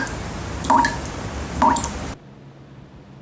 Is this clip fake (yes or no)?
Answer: no